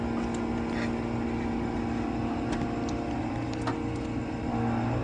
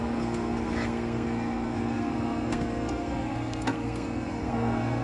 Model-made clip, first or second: second